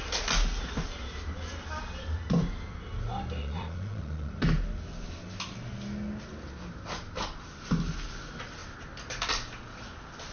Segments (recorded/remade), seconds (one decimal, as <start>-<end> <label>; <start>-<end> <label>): 0.0-3.4 recorded; 3.4-4.3 remade; 4.3-10.3 recorded